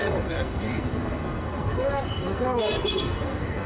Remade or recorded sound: remade